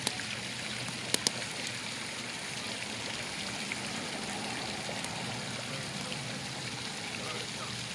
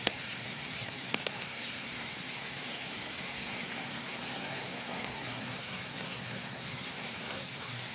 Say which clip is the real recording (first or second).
first